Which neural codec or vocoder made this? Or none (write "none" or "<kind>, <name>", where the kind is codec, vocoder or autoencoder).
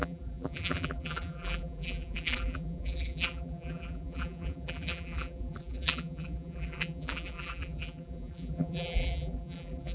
vocoder, BigVGAN v2